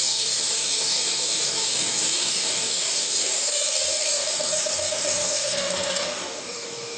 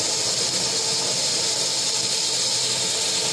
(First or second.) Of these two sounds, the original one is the second